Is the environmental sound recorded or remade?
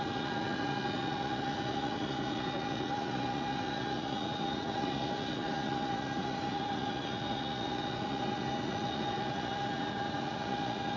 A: remade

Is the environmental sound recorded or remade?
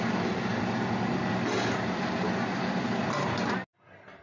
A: recorded